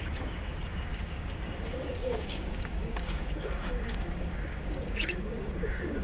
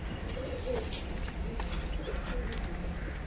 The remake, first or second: first